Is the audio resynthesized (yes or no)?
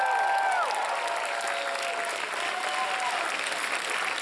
no